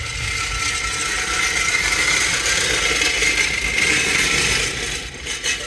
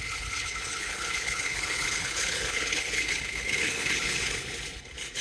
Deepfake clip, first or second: second